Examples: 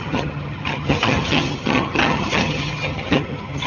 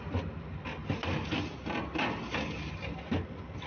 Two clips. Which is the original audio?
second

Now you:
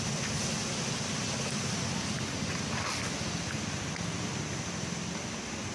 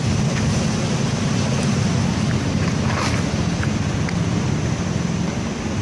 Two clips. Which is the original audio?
first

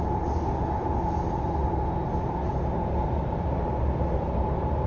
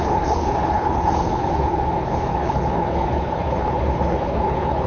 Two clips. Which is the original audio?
first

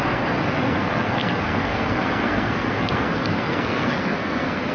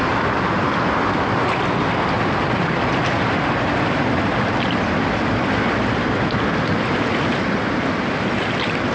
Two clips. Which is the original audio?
second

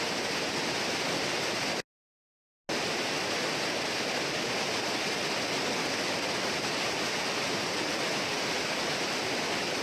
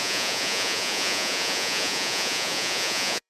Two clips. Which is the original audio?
first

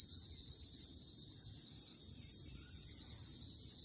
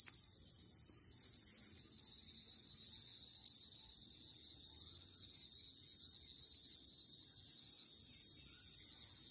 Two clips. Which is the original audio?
second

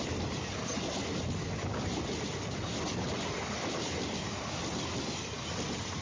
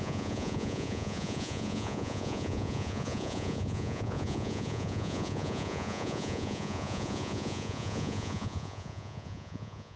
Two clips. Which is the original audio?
first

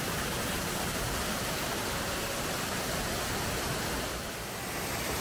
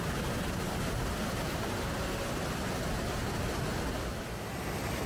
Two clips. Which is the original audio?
second